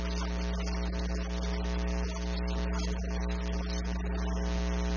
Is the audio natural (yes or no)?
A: yes